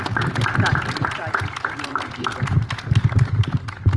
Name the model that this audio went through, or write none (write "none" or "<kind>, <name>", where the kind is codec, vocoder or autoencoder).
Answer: none